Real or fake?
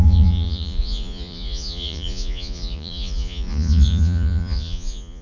fake